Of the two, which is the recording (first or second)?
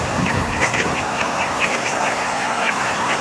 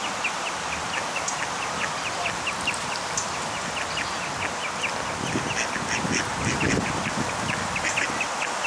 second